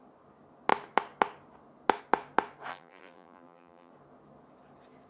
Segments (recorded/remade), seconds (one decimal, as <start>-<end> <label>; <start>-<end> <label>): 0.0-2.7 recorded; 2.7-3.9 remade; 3.9-5.1 recorded

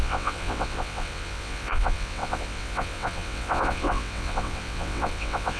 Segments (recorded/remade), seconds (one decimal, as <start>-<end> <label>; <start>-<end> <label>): 0.0-5.6 remade